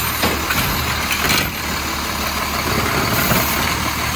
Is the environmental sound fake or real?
real